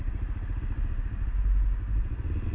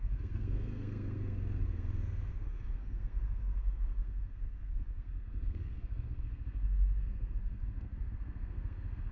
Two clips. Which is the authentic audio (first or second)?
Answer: first